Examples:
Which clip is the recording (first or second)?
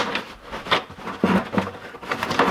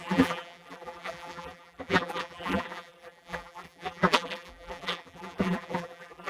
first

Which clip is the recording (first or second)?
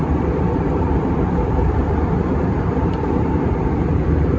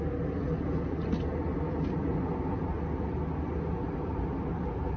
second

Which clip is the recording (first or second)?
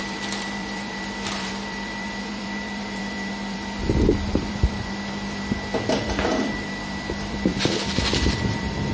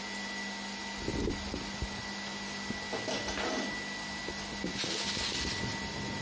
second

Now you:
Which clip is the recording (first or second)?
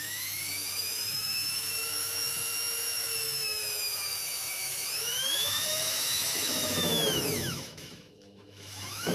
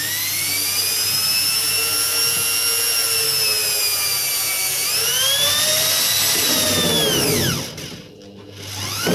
second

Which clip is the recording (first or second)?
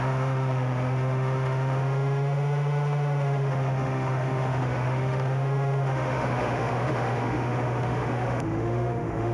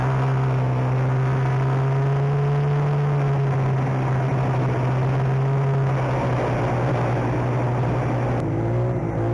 second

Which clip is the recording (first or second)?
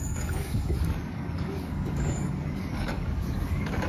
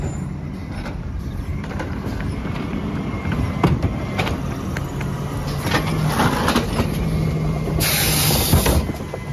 second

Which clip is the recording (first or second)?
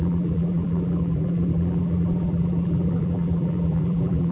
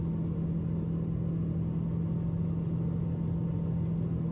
second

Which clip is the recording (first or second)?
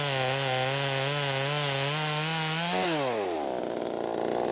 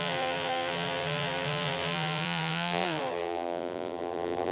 first